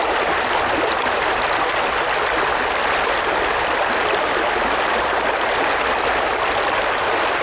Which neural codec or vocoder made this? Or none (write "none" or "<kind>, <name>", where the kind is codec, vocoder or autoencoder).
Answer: none